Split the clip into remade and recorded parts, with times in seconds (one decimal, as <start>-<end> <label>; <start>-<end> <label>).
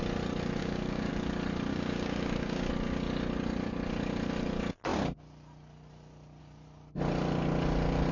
0.0-0.6 recorded; 0.6-1.1 remade; 1.1-1.7 recorded; 1.7-2.7 remade; 2.7-8.1 recorded